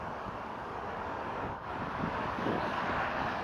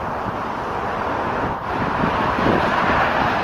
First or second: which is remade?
first